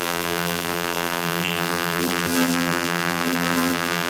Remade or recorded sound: remade